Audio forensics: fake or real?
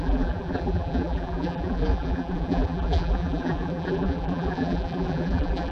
fake